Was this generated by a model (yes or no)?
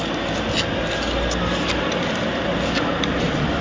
no